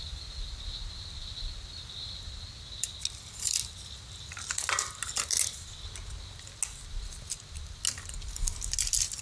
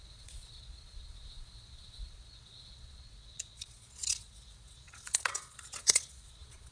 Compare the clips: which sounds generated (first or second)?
second